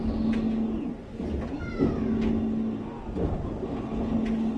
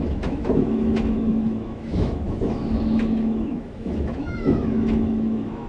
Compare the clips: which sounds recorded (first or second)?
first